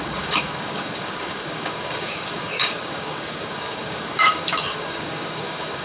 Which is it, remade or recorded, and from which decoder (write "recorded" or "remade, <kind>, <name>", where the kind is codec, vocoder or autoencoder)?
remade, codec, DAC